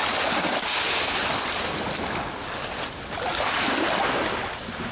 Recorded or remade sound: recorded